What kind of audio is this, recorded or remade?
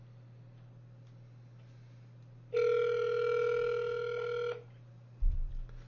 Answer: recorded